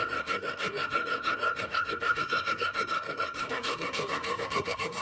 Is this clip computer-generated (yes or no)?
yes